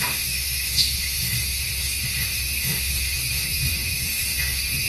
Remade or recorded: remade